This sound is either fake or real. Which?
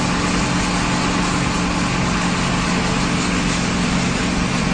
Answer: real